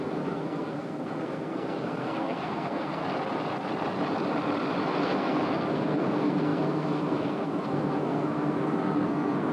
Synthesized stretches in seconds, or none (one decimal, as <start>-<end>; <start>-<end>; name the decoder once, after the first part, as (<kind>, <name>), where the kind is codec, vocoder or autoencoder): 0.0-3.0 (codec, SNAC); 5.0-9.5